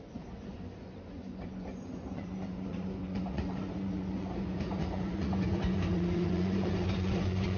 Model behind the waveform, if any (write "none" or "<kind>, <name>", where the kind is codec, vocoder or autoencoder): vocoder, Vocos